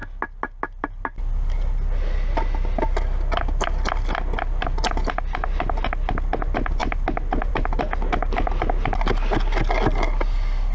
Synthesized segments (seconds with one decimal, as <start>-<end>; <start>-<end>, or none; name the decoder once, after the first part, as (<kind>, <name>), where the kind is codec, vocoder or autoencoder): none

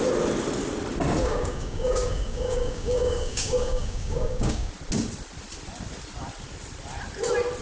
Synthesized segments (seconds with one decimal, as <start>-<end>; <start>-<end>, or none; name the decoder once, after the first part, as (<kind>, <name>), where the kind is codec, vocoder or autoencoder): 1.2-4.7 (codec, DAC)

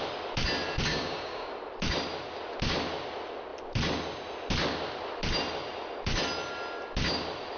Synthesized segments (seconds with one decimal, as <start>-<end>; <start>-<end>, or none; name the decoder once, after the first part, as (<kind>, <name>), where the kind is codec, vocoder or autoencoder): 0.9-1.5 (codec, DAC)

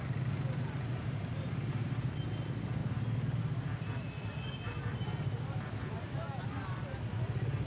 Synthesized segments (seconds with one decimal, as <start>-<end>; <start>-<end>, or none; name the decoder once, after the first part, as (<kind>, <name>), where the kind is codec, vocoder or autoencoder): none

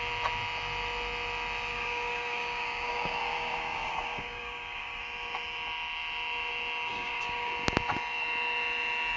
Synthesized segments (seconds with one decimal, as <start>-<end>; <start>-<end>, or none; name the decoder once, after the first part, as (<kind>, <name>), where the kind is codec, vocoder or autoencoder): 1.7-5.0 (codec, DAC); 6.9-7.5